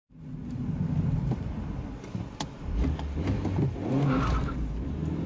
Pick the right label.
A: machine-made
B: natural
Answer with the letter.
B